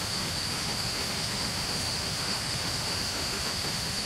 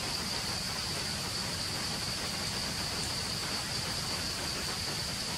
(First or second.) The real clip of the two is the second